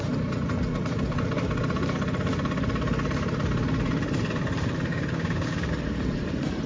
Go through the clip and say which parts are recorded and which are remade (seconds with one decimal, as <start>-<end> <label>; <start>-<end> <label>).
0.0-4.9 recorded; 4.9-5.7 remade; 5.7-6.7 recorded